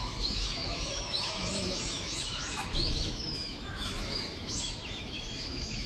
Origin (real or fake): fake